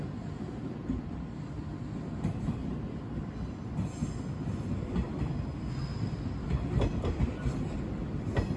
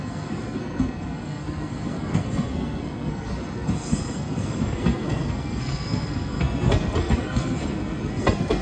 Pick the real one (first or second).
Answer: first